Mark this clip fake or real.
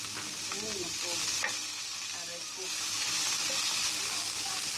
real